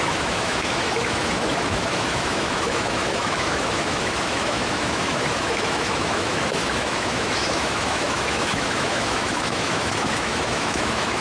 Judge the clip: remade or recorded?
remade